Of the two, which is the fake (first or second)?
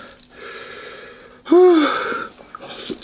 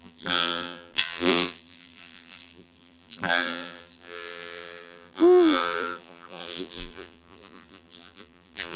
second